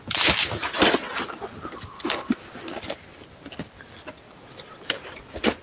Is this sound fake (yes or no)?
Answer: no